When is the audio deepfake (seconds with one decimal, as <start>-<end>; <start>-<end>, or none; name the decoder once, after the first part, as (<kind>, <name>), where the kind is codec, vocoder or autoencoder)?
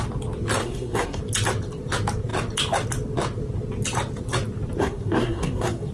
0.6-1.2 (codec, SNAC); 4.8-5.9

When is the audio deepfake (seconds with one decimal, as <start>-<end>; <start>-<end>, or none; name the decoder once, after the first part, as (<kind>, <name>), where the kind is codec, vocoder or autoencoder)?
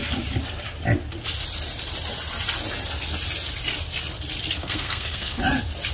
4.6-5.4 (codec, SNAC)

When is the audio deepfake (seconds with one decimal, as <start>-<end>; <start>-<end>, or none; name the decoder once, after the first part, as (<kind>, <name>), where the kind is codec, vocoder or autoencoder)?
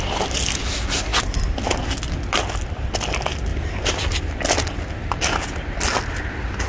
none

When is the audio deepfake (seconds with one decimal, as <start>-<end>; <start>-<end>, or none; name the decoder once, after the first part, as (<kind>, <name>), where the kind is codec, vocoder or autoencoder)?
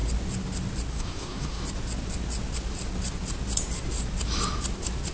0.9-1.6 (codec, SNAC)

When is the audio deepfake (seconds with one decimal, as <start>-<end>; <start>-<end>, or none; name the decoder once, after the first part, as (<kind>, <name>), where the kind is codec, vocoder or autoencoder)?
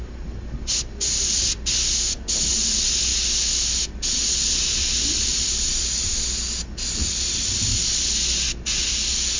none